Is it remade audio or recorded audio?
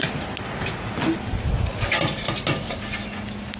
recorded